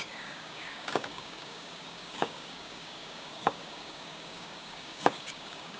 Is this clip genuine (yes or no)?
no